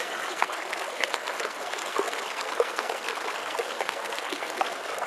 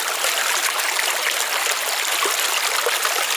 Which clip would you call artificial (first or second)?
first